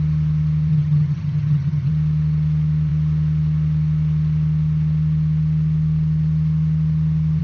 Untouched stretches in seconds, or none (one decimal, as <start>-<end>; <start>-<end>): 0.0-0.7; 1.9-7.4